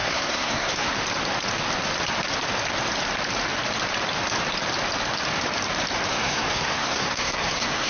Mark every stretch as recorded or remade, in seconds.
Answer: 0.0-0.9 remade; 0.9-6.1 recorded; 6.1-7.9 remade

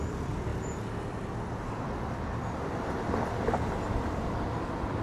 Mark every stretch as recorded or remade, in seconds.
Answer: 0.0-0.5 remade; 0.5-3.5 recorded; 3.5-5.0 remade

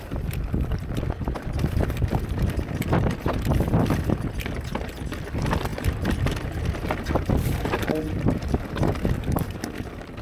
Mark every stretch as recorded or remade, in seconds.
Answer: 0.0-10.2 recorded

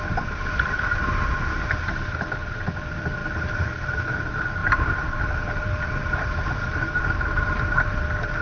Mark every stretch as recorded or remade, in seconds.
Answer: 0.0-3.2 recorded; 3.2-4.1 remade; 4.1-4.6 recorded; 4.6-8.4 remade

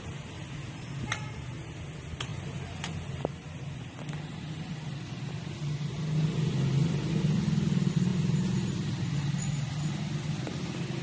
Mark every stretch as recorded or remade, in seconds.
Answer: 0.0-11.0 recorded

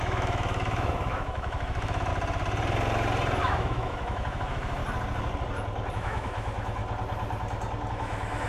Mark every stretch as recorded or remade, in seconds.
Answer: 0.0-2.1 remade; 2.1-3.4 recorded; 3.4-4.8 remade; 4.8-5.9 recorded; 5.9-6.8 remade; 6.8-7.9 recorded; 7.9-8.5 remade

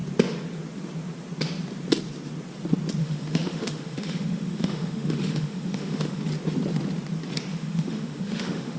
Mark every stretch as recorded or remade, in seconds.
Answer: 0.0-3.0 recorded; 3.0-6.2 remade; 6.2-7.5 recorded; 7.5-8.8 remade